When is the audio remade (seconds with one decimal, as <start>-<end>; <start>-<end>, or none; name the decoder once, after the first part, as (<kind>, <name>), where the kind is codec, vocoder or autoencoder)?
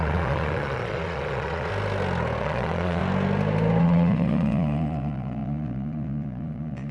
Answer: 0.0-1.7 (vocoder, Vocos); 2.4-3.0; 3.8-6.9